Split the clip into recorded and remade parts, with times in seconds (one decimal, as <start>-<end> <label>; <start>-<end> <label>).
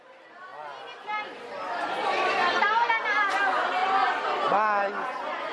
0.0-5.5 recorded